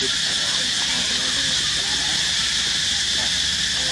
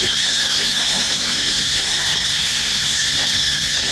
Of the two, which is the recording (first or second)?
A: first